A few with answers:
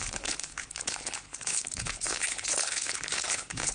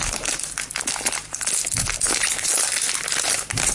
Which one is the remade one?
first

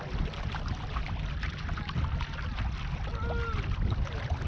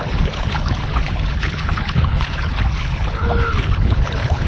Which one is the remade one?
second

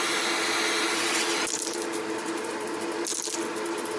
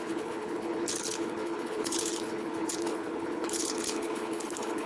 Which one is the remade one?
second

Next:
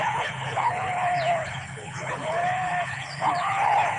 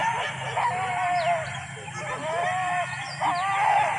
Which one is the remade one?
first